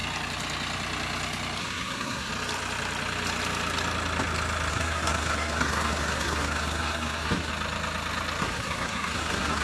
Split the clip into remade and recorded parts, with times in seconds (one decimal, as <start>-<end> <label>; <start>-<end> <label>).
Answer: 0.0-1.6 recorded; 1.6-2.3 remade; 2.3-4.7 recorded; 4.7-7.5 remade; 7.5-8.4 recorded; 8.4-9.6 remade